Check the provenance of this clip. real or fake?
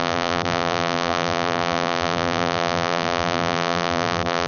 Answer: fake